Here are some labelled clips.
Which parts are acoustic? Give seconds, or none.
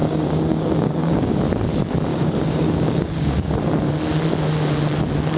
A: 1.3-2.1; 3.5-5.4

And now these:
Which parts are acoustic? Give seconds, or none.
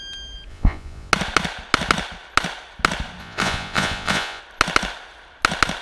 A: 0.0-0.5; 1.1-3.2; 4.4-5.8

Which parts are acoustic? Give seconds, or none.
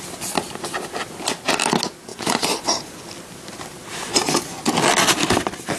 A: 0.0-2.1; 3.1-3.9; 4.7-5.8